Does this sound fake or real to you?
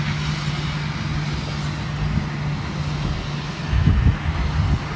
real